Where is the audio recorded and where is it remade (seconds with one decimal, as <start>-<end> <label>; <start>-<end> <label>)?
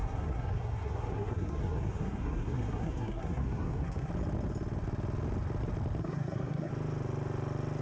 0.0-4.1 remade; 4.1-6.0 recorded; 6.0-6.7 remade; 6.7-7.8 recorded